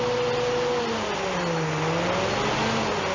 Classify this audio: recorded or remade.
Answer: recorded